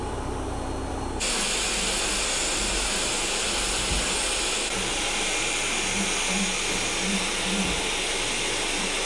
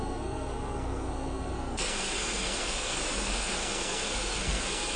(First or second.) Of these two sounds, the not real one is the second